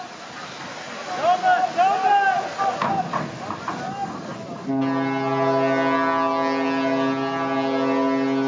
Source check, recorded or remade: recorded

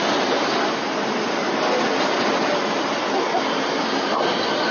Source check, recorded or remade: recorded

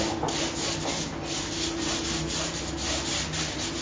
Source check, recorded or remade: recorded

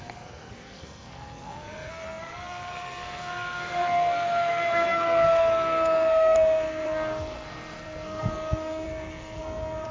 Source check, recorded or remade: remade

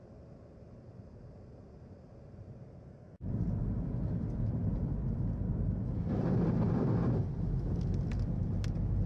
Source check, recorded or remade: recorded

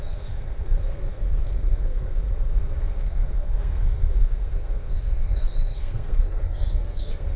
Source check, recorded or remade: remade